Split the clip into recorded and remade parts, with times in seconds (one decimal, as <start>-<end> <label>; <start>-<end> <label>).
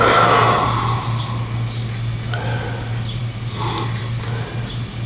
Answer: 0.0-5.1 recorded